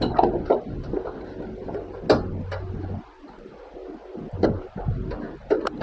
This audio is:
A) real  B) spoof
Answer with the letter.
A